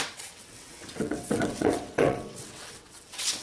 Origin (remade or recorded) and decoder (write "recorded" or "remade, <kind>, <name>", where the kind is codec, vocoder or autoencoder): remade, vocoder, WaveNeXt